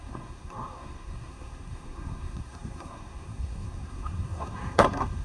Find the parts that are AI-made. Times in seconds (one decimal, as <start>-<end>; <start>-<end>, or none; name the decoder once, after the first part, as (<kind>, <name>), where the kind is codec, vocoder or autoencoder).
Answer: 0.0-5.2 (codec, SNAC)